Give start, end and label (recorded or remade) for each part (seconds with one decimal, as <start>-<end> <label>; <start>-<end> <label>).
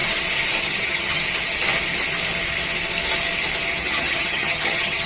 0.0-0.6 recorded; 0.6-1.2 remade; 1.2-3.8 recorded; 3.8-5.1 remade